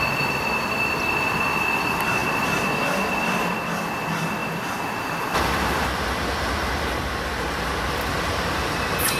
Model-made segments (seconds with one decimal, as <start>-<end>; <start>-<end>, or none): none